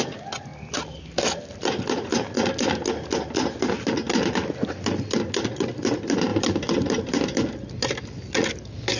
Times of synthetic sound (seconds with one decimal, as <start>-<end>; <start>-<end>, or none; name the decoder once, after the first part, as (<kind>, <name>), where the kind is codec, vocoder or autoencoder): none